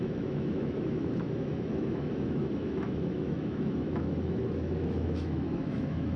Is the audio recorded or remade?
remade